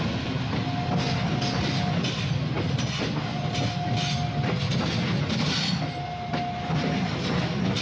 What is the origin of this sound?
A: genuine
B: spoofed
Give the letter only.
A